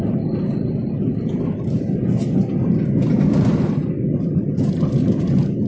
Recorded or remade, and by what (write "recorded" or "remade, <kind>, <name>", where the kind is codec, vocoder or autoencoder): recorded